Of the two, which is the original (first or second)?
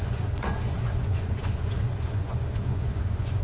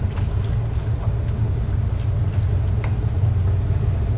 second